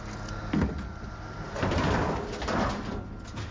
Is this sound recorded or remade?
recorded